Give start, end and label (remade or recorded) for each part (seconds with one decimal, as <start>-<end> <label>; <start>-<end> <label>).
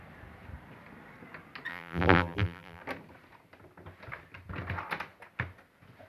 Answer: 0.0-1.7 recorded; 1.7-2.8 remade; 2.8-6.1 recorded